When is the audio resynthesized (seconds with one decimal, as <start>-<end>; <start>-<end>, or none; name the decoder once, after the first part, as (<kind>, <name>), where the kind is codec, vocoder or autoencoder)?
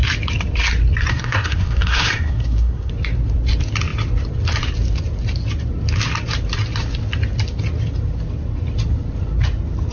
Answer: 1.1-2.9 (codec, SNAC)